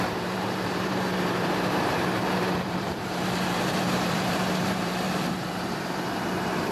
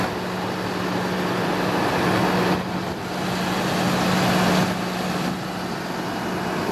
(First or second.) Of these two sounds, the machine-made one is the first